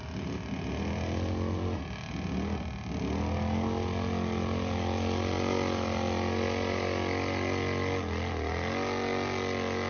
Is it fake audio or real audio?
real